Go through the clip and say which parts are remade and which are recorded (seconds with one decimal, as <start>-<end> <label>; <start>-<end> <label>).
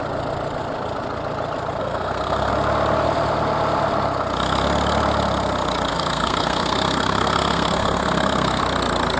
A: 0.0-1.8 recorded; 1.8-2.5 remade; 2.5-5.9 recorded; 5.9-8.6 remade; 8.6-9.2 recorded